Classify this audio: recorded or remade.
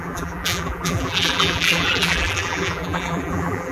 remade